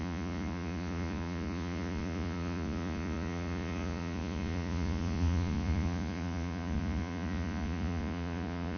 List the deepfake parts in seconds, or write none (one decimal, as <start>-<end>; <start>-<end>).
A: 0.0-8.8